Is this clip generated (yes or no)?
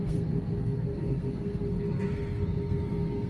yes